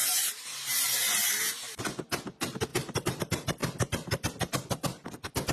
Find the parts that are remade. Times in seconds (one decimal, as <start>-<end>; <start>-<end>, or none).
2.7-3.2

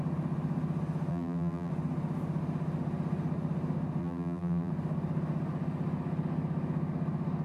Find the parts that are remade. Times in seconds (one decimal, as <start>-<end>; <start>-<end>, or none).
1.1-1.7; 4.0-4.7

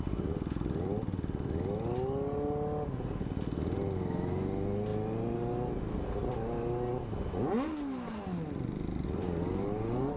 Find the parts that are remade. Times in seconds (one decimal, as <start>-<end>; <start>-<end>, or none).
none

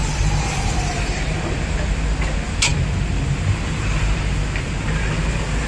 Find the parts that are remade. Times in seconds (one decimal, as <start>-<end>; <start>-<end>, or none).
0.0-1.2

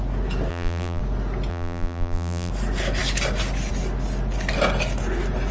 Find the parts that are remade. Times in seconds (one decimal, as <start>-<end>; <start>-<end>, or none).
0.5-1.0; 1.5-2.5

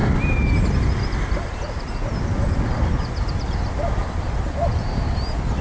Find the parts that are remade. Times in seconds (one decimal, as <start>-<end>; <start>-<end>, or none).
none